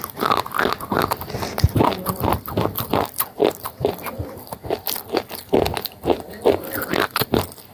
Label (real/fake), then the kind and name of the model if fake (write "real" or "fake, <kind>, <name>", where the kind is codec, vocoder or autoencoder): real